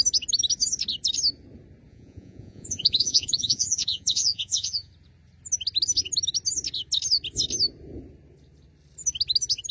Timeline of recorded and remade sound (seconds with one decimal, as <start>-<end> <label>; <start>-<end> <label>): 0.0-1.9 recorded; 1.9-4.9 remade; 4.9-9.7 recorded